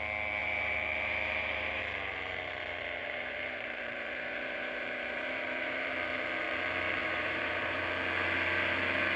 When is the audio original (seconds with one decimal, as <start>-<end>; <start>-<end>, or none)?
0.0-0.4; 1.8-3.0; 5.9-7.0; 7.8-9.2